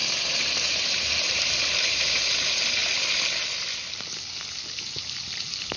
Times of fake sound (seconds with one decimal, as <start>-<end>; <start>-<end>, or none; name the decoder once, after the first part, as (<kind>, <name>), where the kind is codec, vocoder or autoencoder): 0.0-2.4 (vocoder, BigVGAN v2)